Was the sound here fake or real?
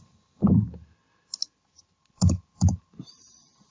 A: real